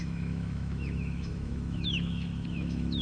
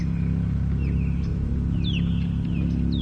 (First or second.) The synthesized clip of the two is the first